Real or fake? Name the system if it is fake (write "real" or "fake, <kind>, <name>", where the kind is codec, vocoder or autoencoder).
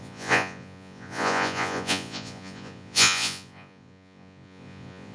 fake, vocoder, Vocos